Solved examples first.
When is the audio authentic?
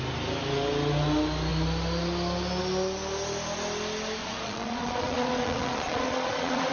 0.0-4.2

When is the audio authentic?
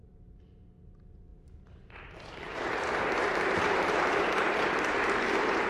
0.0-1.3; 4.7-5.7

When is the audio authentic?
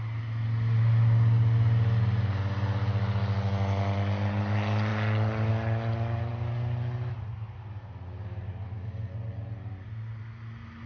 0.0-10.9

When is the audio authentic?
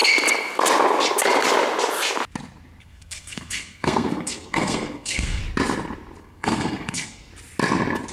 0.0-2.8; 5.4-6.2; 7.3-8.1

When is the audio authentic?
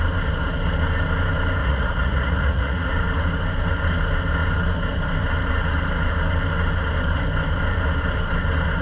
0.0-1.6; 2.9-8.8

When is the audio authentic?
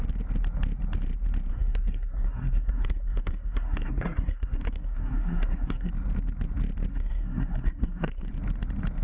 0.0-1.5; 5.9-6.9; 8.3-9.0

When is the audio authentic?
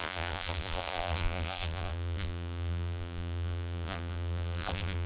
none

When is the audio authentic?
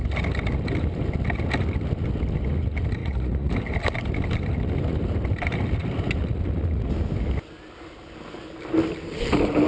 0.0-3.0; 3.5-9.7